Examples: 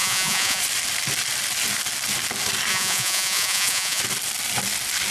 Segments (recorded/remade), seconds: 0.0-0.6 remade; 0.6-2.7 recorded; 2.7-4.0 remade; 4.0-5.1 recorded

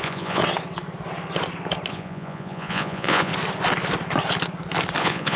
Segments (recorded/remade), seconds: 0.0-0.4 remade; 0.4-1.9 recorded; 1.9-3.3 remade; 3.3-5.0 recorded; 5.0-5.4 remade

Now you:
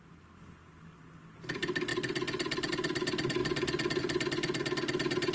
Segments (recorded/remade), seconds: 0.0-5.3 recorded